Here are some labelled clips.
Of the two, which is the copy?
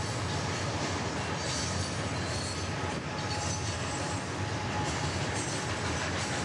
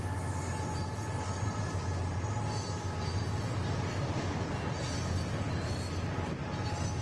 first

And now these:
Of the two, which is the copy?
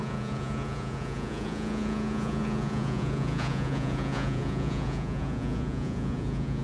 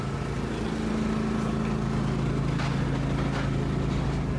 first